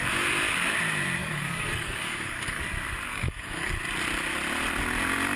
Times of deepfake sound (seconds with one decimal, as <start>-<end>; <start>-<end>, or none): 1.2-2.6; 3.1-3.7